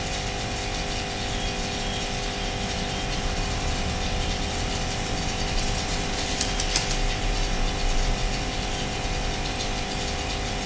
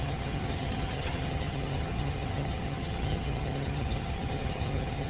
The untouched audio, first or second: first